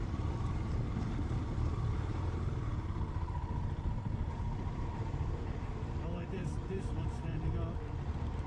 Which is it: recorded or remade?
remade